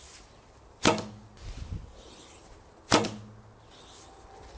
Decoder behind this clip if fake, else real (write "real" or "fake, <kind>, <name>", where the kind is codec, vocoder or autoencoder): real